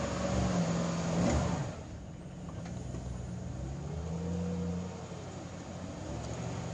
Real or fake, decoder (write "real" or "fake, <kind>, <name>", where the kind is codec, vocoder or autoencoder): real